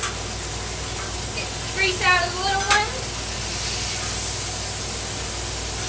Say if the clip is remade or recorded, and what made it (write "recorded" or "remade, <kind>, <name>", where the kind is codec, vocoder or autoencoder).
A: recorded